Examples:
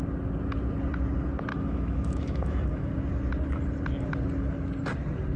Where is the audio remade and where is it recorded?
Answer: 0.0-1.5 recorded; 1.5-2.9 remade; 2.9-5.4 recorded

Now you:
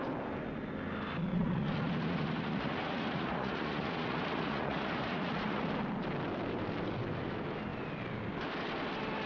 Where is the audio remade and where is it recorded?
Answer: 0.0-1.3 recorded; 1.3-5.7 remade; 5.7-9.3 recorded

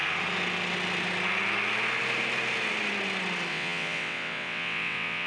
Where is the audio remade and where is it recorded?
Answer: 0.0-3.5 recorded; 3.5-5.3 remade

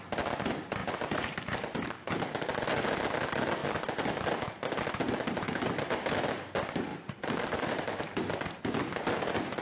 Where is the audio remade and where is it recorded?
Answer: 0.0-0.8 recorded; 0.8-2.2 remade; 2.2-6.9 recorded; 6.9-8.0 remade; 8.0-9.6 recorded

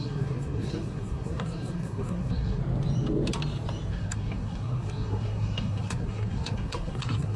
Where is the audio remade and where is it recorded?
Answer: 0.0-2.6 remade; 2.6-3.9 recorded; 3.9-7.4 remade

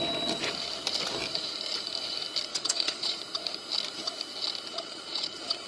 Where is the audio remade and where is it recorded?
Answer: 0.0-2.5 recorded; 2.5-3.2 remade; 3.2-4.7 recorded; 4.7-5.7 remade

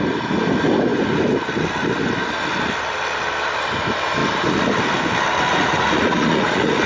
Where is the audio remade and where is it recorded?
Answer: 0.0-5.5 recorded; 5.5-6.9 remade

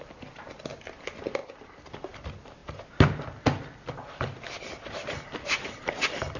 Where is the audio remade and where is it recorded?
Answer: 0.0-6.4 recorded